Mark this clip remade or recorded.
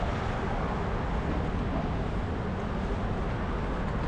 recorded